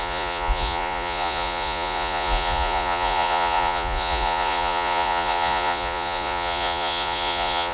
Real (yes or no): no